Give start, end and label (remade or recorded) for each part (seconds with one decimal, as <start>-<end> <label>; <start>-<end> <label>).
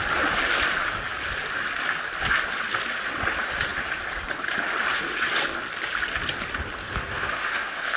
0.0-6.8 recorded; 6.8-8.0 remade